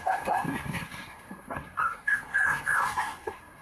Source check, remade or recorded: remade